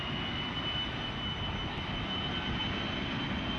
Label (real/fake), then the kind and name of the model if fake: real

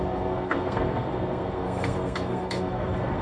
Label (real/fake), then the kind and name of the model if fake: fake, codec, SNAC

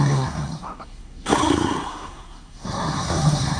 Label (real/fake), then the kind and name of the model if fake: fake, codec, SNAC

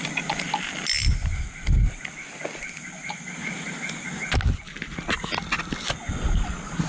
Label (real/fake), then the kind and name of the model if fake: real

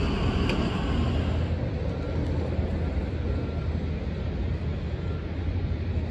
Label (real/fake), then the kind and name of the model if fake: real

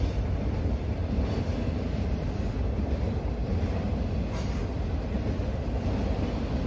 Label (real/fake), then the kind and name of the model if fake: real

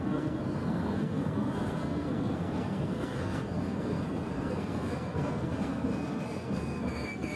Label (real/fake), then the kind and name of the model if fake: fake, codec, SNAC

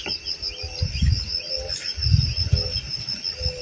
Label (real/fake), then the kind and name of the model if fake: real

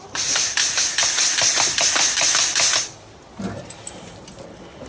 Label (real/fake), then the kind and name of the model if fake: real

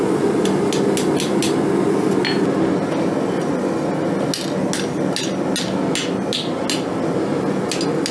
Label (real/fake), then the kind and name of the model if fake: real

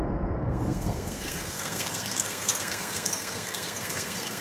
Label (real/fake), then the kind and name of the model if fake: fake, codec, SNAC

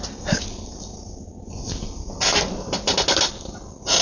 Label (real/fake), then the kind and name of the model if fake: real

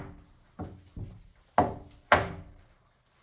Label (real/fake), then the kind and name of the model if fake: real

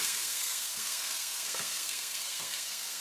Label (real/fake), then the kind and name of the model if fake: fake, codec, SNAC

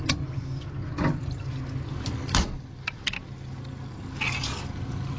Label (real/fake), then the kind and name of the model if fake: real